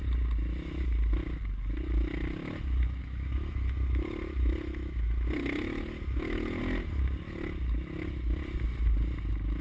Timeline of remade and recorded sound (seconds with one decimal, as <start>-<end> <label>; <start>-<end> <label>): 0.0-3.0 recorded; 3.0-6.6 remade; 6.6-9.6 recorded